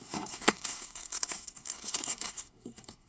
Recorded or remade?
remade